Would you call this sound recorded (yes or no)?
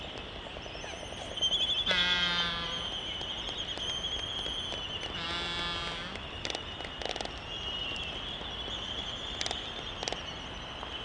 yes